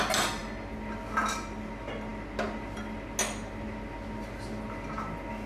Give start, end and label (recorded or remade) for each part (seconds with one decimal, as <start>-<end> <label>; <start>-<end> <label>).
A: 0.0-5.5 recorded